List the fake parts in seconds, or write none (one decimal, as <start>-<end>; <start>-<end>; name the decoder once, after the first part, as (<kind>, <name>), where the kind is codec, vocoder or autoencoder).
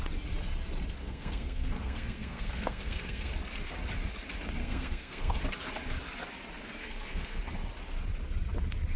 1.0-3.3 (codec, SNAC); 4.6-5.4; 6.8-7.4